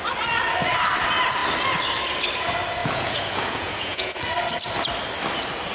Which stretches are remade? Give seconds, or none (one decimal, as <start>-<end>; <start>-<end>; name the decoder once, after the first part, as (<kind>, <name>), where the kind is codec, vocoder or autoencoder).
2.8-4.2 (vocoder, Vocos)